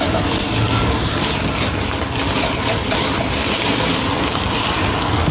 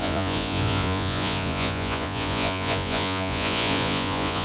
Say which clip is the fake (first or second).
second